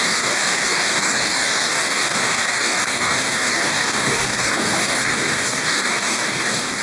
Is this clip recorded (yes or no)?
no